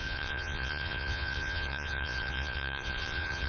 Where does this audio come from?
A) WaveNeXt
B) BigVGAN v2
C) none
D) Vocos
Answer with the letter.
D